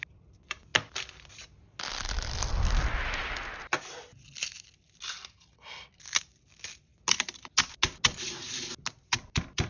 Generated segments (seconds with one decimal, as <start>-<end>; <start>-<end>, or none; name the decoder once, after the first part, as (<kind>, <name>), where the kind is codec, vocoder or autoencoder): none